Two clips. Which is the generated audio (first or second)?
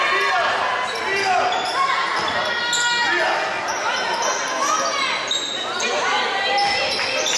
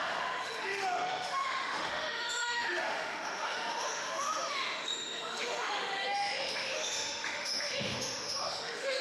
second